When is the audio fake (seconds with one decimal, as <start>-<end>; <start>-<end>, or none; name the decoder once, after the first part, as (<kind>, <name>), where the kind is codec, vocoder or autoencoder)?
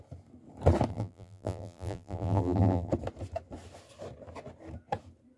0.9-2.9 (vocoder, BigVGAN v2)